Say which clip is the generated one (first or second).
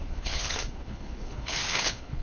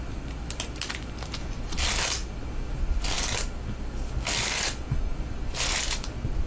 first